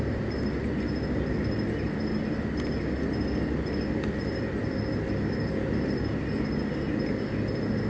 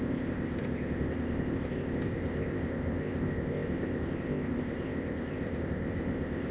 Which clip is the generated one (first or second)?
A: second